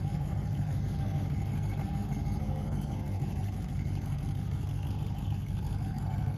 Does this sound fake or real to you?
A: fake